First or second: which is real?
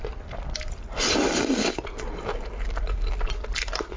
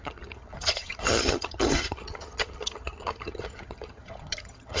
first